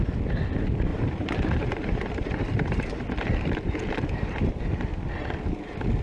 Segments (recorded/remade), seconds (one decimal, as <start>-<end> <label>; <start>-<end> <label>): 0.0-0.9 recorded; 0.9-4.5 remade; 4.5-6.0 recorded